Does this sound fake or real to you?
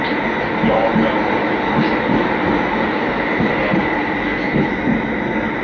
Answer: real